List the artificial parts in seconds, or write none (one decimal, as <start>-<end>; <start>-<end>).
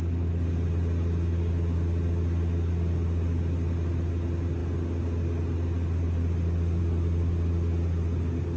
none